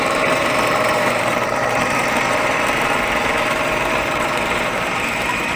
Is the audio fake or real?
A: fake